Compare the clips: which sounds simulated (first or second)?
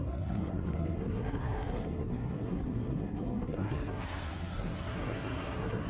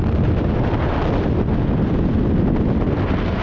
first